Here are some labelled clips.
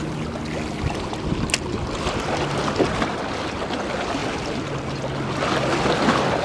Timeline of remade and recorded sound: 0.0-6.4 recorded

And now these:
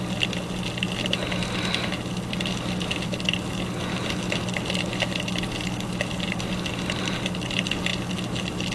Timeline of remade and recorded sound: 0.0-8.7 recorded